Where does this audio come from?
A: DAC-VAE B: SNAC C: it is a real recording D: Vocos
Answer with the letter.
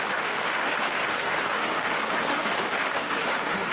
A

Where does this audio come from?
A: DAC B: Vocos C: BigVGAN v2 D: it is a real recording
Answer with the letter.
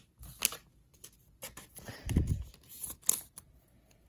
D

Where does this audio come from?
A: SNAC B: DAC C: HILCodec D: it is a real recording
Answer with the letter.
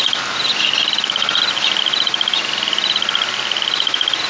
D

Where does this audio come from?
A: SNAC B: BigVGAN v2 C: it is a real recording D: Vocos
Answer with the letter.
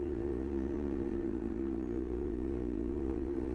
D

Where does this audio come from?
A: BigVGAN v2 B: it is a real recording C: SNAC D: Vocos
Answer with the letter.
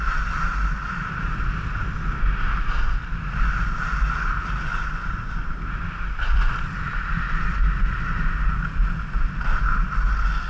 B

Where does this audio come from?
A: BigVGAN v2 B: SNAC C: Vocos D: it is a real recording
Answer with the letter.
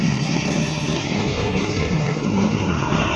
B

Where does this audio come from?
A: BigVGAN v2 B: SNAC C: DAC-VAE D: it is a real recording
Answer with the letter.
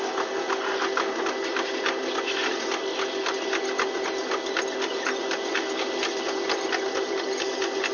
D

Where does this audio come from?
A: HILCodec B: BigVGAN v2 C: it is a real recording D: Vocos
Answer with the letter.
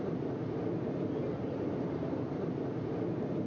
C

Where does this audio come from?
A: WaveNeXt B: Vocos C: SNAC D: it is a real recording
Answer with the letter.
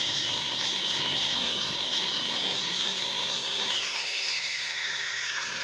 C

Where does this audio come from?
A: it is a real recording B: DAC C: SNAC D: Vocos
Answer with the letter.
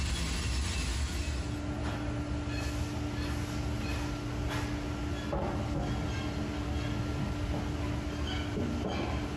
A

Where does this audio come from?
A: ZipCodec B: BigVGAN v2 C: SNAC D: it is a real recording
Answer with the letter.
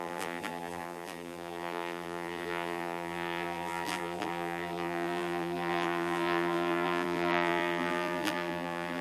B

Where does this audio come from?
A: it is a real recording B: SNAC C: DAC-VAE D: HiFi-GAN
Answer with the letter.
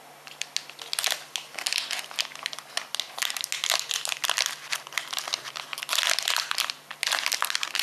A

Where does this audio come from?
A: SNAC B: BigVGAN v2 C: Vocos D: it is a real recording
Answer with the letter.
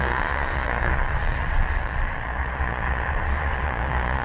C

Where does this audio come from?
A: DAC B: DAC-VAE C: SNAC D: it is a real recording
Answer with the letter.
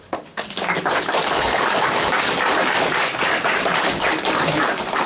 A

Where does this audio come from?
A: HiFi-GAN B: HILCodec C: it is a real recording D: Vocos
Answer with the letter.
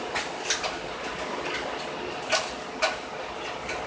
C